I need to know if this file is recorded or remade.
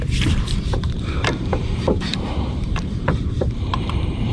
remade